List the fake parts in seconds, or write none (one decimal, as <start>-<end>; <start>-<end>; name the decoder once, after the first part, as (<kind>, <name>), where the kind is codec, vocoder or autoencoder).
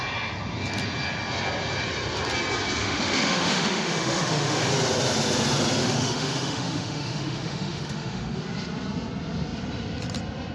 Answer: 2.8-4.7 (autoencoder, DAC-VAE); 5.8-8.4